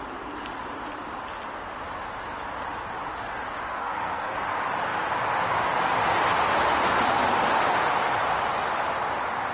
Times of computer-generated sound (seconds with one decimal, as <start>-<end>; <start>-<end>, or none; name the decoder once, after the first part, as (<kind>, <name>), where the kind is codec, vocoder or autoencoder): 3.7-4.3 (codec, SNAC)